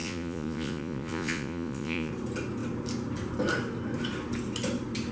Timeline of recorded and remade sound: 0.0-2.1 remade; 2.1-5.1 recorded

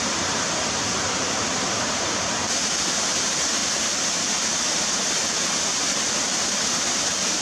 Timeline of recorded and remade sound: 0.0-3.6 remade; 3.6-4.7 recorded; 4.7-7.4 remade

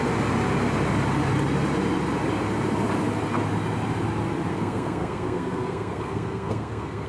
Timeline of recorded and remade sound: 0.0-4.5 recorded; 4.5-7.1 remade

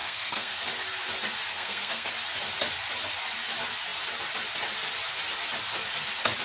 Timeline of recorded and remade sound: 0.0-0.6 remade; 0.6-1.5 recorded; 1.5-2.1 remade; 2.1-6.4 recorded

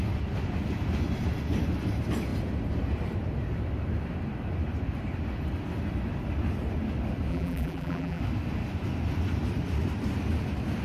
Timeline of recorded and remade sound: 0.0-7.3 recorded; 7.3-8.2 remade; 8.2-10.8 recorded

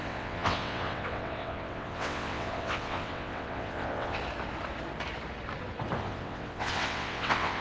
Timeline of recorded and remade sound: 0.0-4.2 remade; 4.2-6.0 recorded; 6.0-7.6 remade

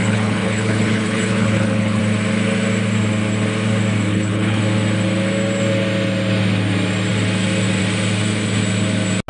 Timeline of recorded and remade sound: 0.0-2.0 remade; 2.0-4.1 recorded; 4.1-4.6 remade; 4.6-9.3 recorded